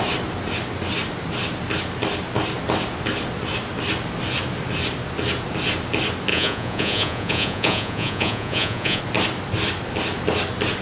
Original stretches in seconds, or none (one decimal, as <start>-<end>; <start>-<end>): 0.0-6.3; 9.0-10.8